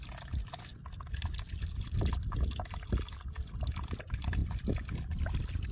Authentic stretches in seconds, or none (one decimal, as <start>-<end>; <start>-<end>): 0.0-5.7